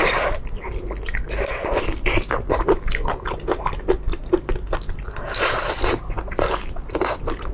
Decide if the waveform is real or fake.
real